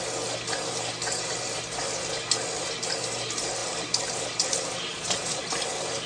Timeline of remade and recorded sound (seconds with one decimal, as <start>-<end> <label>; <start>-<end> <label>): 0.0-4.9 recorded; 4.9-5.5 remade; 5.5-6.1 recorded